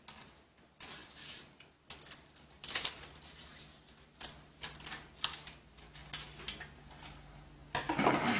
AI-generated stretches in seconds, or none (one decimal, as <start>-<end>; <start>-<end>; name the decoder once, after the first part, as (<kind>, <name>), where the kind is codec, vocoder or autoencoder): none